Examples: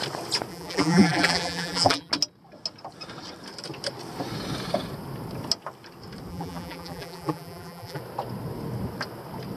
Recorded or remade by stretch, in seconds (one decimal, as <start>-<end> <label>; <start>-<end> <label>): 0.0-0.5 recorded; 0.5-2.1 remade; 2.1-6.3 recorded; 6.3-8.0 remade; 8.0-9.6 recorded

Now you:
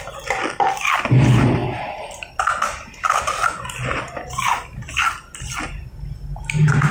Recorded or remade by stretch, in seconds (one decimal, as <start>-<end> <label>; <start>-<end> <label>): 0.0-6.9 recorded

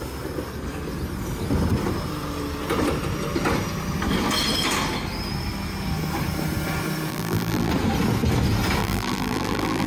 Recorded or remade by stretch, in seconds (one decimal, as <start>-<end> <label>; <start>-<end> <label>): 0.0-7.1 recorded; 7.1-7.7 remade; 7.7-8.8 recorded; 8.8-9.9 remade

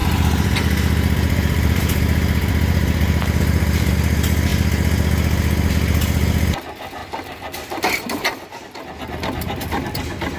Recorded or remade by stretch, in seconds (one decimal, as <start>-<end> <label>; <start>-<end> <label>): 0.0-3.9 remade; 3.9-7.0 recorded; 7.0-10.4 remade

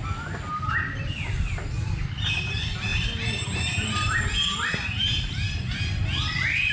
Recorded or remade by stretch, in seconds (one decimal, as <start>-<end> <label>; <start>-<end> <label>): 0.0-2.9 recorded; 2.9-5.5 remade; 5.5-6.7 recorded